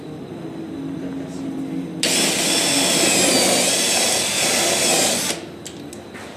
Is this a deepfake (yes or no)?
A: no